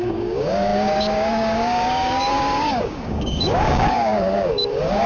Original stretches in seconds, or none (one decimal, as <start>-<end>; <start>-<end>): none